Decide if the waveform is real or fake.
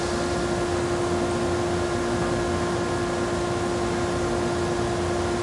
real